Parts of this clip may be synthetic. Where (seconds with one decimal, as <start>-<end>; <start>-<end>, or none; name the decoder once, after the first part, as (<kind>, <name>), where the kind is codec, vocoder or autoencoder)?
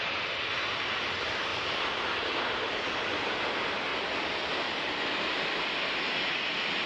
none